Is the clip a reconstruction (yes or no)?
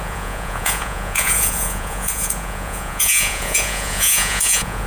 yes